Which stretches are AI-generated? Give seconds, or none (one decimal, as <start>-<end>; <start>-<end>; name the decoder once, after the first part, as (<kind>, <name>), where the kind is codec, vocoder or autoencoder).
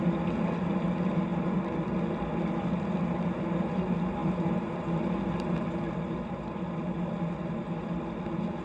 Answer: none